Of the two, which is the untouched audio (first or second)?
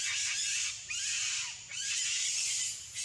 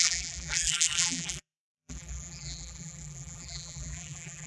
first